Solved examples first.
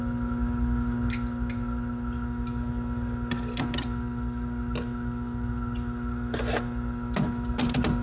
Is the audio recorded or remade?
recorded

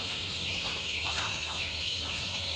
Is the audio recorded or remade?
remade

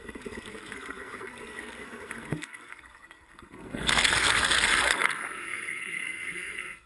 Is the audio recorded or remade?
remade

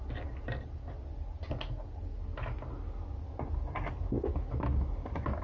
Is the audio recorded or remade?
recorded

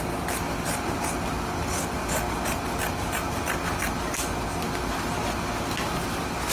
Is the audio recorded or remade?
recorded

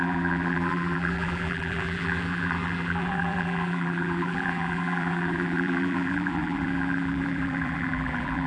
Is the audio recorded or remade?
remade